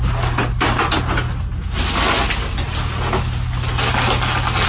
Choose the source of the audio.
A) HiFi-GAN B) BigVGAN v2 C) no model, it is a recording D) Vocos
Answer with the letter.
C